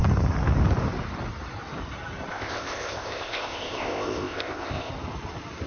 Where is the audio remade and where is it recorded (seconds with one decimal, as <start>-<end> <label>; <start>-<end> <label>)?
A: 0.0-2.3 recorded; 2.3-4.9 remade; 4.9-5.7 recorded